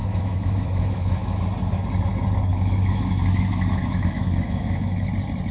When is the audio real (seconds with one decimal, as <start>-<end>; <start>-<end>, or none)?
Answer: 1.4-2.5; 5.1-5.5